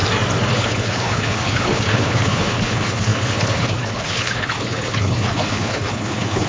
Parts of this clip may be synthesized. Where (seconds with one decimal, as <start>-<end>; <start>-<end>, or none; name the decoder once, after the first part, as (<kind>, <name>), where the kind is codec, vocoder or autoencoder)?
0.5-6.5 (codec, HILCodec)